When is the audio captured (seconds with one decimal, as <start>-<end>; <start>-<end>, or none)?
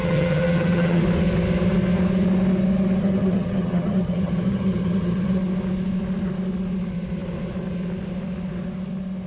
1.0-3.0; 5.4-9.3